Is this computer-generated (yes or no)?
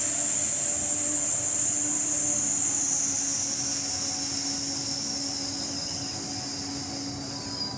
no